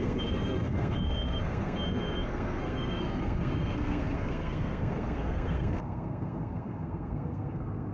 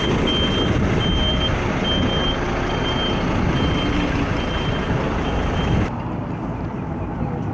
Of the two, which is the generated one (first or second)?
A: first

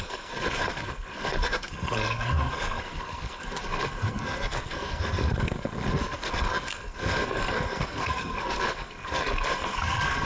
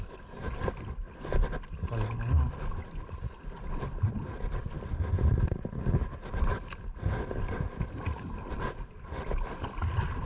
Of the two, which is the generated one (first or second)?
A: first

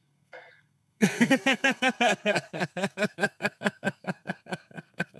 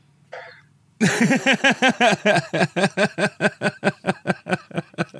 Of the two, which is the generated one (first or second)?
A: first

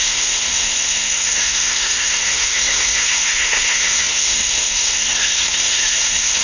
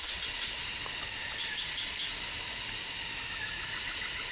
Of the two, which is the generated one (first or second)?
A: first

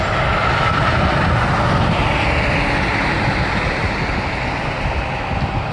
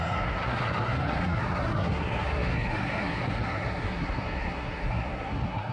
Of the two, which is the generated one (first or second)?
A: second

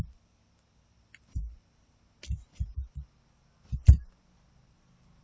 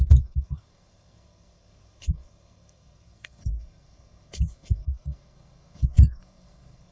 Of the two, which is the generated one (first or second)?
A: second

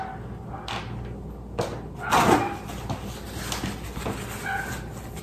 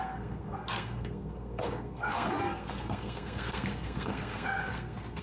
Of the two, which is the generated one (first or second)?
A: second